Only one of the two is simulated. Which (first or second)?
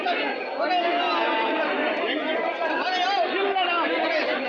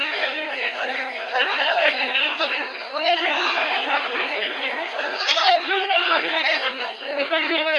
second